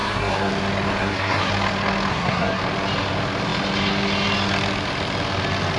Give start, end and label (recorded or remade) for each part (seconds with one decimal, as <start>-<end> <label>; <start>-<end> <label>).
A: 0.0-0.5 remade; 0.5-1.0 recorded; 1.0-1.5 remade; 1.5-2.1 recorded; 2.1-2.6 remade; 2.6-5.8 recorded